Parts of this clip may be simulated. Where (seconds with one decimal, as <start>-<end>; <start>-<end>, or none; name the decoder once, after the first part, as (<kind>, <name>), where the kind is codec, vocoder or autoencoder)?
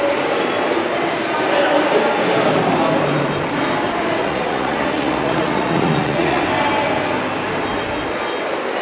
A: 4.2-6.4 (vocoder, Vocos)